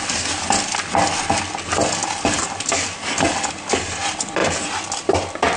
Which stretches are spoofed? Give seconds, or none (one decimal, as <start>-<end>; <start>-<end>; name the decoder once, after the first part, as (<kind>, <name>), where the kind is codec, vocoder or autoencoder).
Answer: none

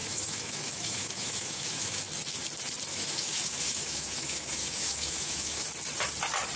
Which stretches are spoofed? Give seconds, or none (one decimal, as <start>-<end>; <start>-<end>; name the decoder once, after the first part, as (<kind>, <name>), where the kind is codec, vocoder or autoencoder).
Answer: 0.0-2.1 (autoencoder, DAC-VAE); 2.9-5.7